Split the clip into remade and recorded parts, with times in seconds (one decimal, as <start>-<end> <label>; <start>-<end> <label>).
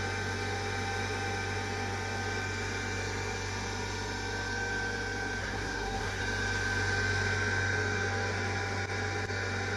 0.0-5.4 recorded; 5.4-6.2 remade; 6.2-9.8 recorded